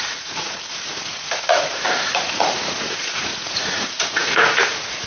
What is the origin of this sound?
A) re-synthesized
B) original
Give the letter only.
A